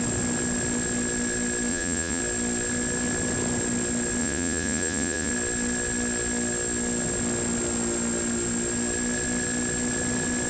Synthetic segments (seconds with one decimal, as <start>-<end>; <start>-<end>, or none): 1.7-2.2; 4.2-5.3